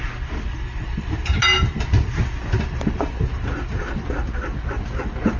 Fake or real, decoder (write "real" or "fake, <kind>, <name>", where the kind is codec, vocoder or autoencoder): real